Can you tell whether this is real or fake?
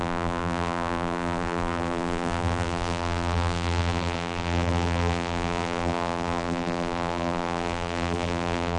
fake